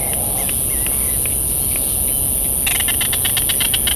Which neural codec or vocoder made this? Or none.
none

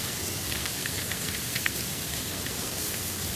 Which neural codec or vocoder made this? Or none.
codec, SNAC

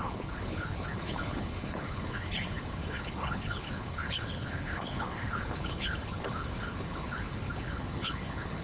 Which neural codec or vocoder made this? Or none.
codec, HILCodec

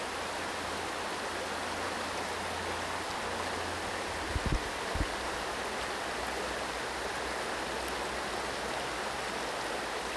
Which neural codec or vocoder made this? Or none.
none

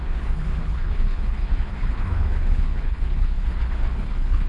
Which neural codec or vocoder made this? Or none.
codec, HILCodec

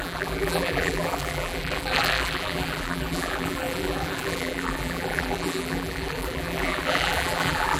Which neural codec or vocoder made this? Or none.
vocoder, BigVGAN v2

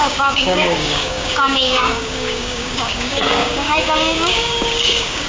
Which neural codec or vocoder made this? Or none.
codec, DAC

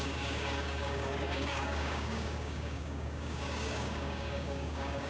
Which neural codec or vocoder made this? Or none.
codec, DAC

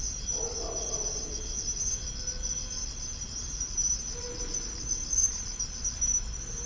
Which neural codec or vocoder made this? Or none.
none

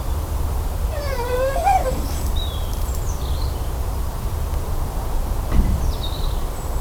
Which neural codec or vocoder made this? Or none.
none